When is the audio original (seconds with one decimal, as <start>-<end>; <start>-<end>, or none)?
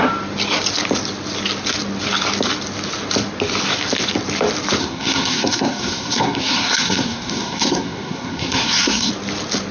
0.0-4.8; 9.1-9.7